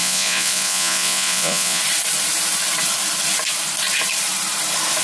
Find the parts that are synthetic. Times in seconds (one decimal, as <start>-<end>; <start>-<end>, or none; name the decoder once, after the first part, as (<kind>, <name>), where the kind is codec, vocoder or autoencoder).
0.0-1.8 (vocoder, Vocos)